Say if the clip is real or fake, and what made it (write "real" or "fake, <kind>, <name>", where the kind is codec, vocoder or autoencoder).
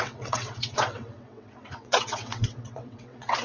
fake, vocoder, WaveNeXt